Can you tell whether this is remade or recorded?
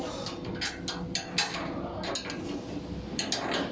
recorded